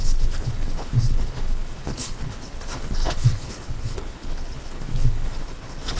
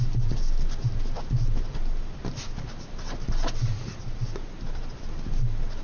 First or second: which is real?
second